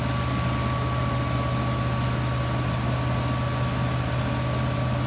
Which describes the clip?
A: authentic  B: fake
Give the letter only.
A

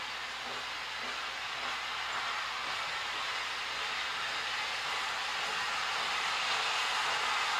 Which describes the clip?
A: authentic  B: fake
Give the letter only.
A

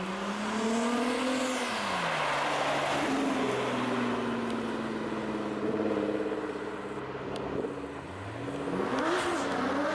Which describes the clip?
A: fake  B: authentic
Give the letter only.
B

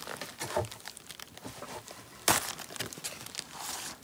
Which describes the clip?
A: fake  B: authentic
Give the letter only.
B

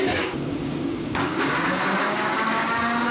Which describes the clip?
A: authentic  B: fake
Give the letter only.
B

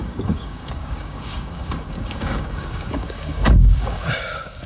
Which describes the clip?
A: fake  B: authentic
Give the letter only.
A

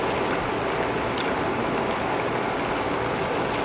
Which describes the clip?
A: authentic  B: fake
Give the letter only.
A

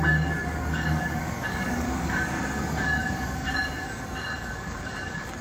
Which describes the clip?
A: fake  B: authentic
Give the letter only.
A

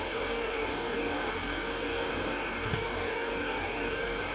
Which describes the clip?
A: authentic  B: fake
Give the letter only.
B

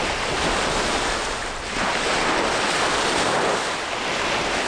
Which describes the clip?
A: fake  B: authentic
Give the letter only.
B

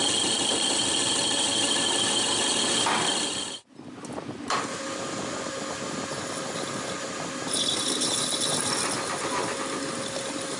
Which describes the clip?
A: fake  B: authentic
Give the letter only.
B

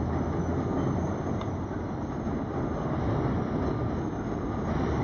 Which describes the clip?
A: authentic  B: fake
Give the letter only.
A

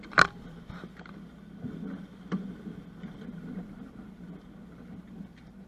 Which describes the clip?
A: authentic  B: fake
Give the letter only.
A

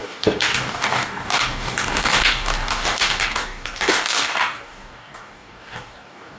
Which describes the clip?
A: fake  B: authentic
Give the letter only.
A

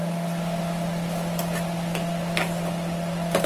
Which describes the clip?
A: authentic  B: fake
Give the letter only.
A